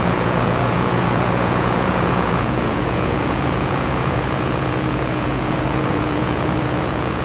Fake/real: fake